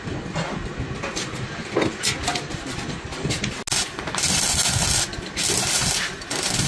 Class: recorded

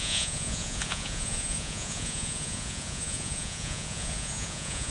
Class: remade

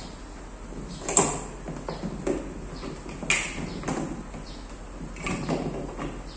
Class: recorded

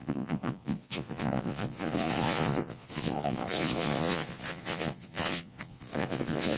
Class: remade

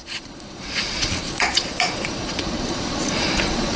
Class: remade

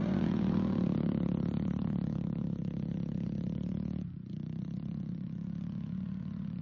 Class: remade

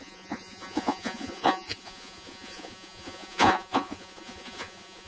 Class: remade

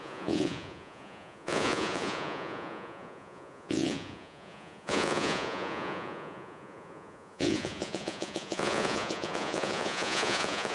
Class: remade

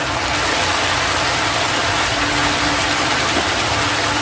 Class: recorded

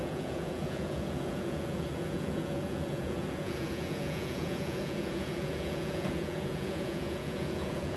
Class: remade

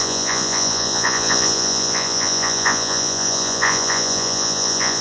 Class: remade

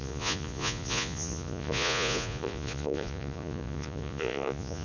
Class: remade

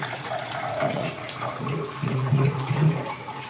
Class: remade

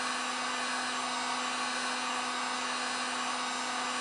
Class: recorded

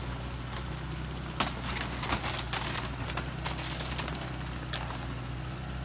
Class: recorded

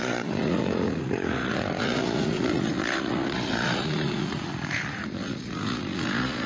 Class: remade